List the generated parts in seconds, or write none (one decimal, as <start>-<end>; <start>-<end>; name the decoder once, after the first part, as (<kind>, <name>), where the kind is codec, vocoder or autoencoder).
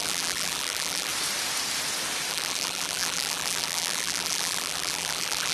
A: 0.0-1.1 (vocoder, BigVGAN v2); 2.3-5.5